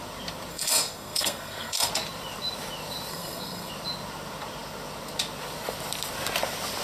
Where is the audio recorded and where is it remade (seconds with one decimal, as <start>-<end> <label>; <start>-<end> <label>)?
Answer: 0.0-0.5 recorded; 0.5-1.9 remade; 1.9-3.1 recorded; 3.1-3.7 remade; 3.7-6.8 recorded